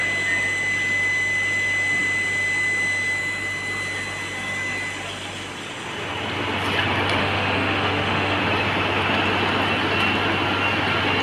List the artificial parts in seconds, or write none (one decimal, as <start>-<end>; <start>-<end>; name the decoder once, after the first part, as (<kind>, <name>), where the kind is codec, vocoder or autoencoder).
7.2-8.4 (autoencoder, DAC-VAE)